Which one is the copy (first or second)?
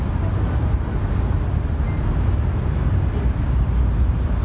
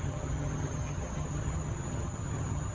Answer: second